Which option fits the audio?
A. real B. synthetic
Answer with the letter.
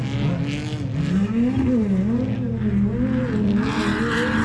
A